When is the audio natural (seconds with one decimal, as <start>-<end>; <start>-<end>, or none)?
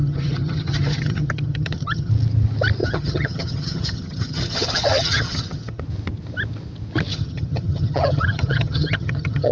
2.1-2.8; 5.8-7.1